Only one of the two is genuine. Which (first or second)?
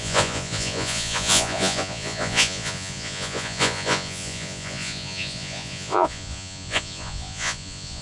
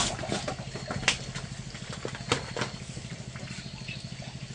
second